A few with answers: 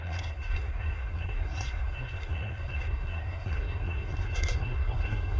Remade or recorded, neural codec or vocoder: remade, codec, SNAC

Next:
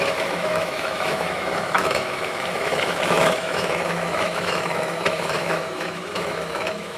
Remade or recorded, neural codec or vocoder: remade, autoencoder, DAC-VAE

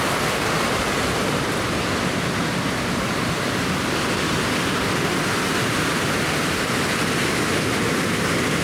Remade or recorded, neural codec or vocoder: recorded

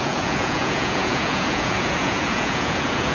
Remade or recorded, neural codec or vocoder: remade, vocoder, Vocos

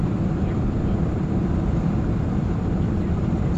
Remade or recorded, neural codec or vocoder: remade, vocoder, BigVGAN v2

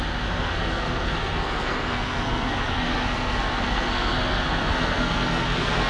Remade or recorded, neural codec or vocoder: remade, codec, SNAC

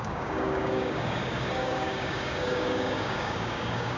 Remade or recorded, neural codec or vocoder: remade, codec, DAC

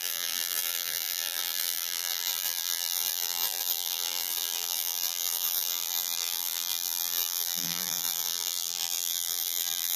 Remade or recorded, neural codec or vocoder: remade, vocoder, BigVGAN v2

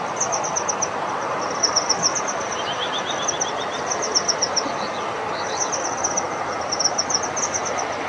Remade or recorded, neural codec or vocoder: recorded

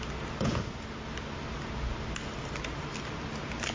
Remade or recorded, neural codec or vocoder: recorded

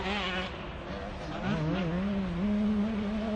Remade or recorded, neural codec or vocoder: recorded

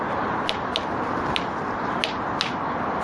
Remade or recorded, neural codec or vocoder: recorded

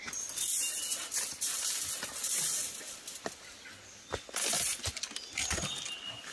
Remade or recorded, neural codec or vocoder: recorded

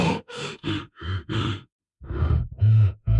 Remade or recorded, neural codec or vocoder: remade, autoencoder, DAC-VAE